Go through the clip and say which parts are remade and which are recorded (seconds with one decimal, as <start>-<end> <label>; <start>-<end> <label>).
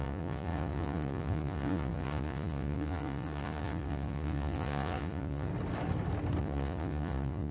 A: 0.0-5.5 remade; 5.5-6.4 recorded; 6.4-7.5 remade